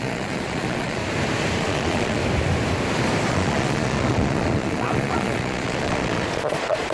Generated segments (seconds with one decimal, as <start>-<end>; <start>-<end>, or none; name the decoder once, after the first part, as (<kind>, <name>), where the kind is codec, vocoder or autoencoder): 0.0-1.0 (vocoder, Vocos); 1.6-2.2; 3.3-6.9